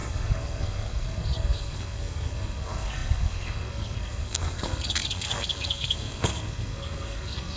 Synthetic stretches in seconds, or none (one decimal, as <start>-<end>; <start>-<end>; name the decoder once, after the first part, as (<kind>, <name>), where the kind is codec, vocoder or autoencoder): 0.0-7.6 (codec, SNAC)